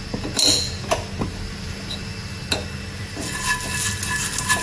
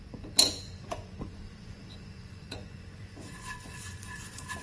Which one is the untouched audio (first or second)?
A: first